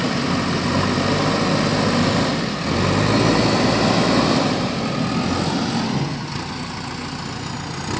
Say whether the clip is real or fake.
real